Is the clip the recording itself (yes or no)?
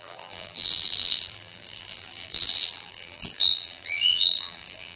no